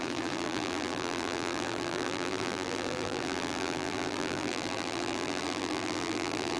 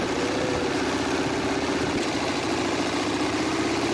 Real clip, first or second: second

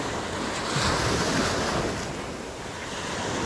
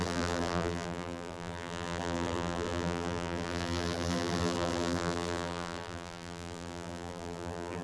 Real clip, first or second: first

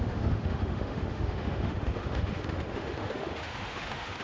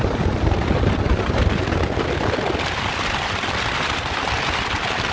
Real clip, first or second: second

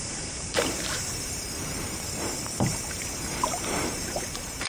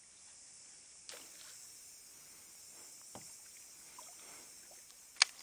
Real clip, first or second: second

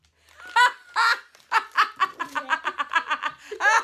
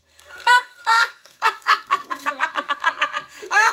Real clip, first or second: first